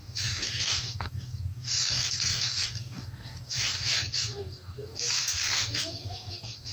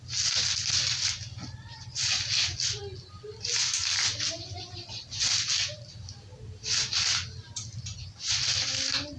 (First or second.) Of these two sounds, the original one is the second